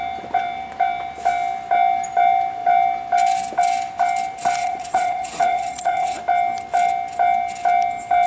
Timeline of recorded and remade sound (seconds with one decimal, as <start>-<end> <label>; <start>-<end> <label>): 0.0-4.6 recorded; 4.6-6.2 remade; 6.2-8.3 recorded